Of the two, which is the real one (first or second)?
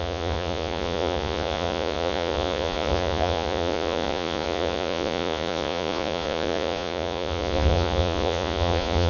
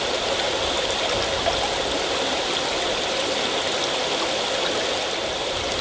second